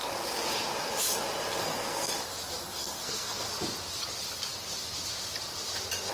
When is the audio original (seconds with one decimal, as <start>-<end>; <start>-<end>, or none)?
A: 0.0-1.6; 2.1-2.8; 3.5-6.1